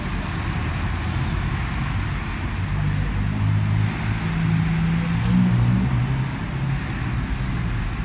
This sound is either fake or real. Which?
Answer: real